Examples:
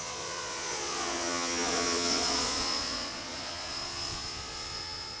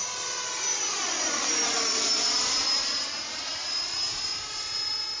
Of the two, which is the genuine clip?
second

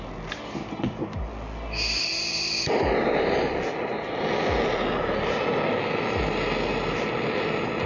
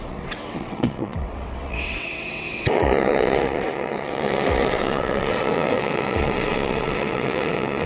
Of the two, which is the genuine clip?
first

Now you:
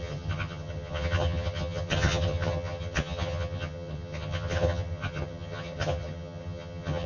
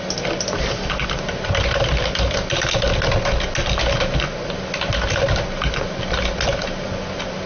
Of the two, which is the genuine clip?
second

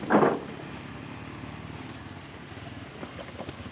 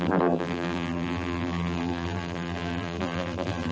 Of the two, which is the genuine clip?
first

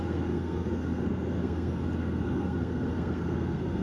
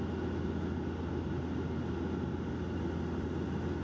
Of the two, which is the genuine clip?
second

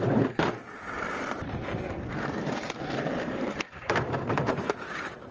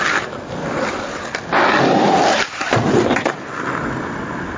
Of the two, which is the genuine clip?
second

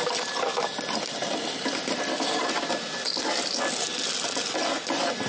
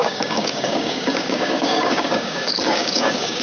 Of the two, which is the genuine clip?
first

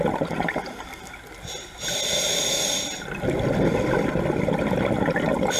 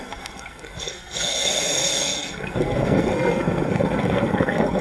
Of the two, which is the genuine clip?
first